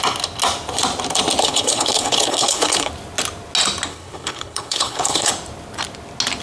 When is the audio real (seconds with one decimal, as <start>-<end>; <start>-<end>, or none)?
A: 0.0-1.4; 2.9-3.9; 5.3-6.4